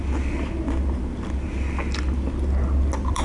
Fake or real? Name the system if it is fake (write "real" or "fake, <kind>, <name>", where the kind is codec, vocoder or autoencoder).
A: real